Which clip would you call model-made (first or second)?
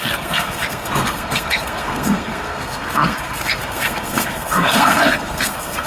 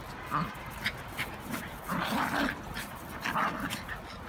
first